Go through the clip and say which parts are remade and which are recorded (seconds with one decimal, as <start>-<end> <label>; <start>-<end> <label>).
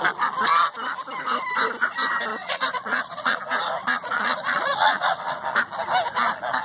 0.0-2.3 recorded; 2.3-3.4 remade; 3.4-3.8 recorded; 3.8-5.4 remade; 5.4-6.6 recorded